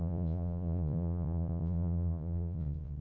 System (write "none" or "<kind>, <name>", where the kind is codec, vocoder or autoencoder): vocoder, Vocos